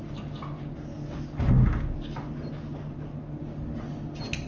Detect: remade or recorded recorded